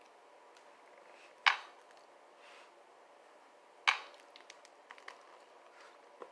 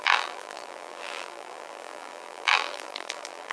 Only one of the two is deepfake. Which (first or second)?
second